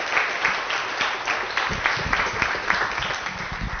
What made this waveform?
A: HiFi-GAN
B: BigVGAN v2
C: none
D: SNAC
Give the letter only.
C